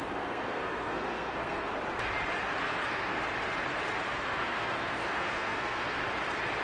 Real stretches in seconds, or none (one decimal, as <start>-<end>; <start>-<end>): 1.7-2.6; 3.1-4.1; 6.0-6.6

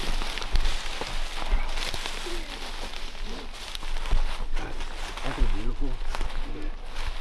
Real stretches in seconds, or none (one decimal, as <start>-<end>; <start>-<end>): 0.0-7.2

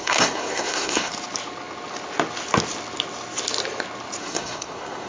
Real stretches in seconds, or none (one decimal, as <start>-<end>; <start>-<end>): 1.1-4.2

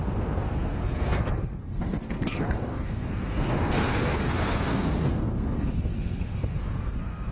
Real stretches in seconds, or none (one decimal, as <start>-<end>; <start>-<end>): none

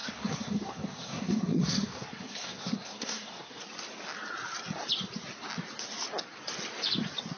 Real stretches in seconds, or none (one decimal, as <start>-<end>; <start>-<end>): 3.6-7.4